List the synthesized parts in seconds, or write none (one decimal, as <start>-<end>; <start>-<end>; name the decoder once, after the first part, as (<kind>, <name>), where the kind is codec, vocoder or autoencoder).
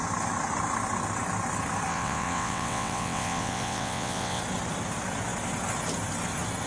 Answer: 1.9-4.4 (vocoder, WaveNeXt)